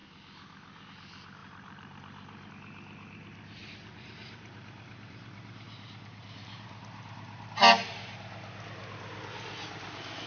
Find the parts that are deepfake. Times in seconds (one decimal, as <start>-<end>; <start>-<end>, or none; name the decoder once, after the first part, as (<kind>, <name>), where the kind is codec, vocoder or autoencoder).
1.4-2.5 (vocoder, BigVGAN v2); 3.6-7.9